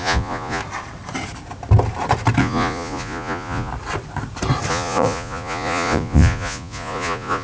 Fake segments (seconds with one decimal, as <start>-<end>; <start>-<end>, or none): 0.0-0.6; 2.4-3.7; 4.7-7.4